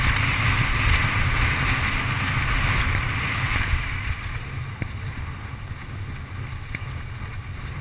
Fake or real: real